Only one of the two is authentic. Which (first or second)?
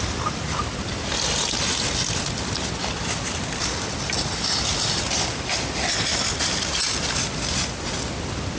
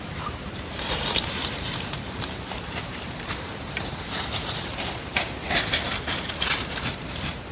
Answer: first